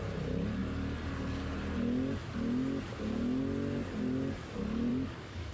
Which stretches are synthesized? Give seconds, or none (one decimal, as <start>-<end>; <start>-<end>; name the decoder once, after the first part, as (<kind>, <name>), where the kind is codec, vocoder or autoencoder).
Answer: 4.9-5.5 (codec, DAC)